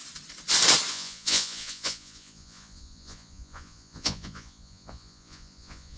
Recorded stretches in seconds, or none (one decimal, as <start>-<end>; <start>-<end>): 0.0-0.9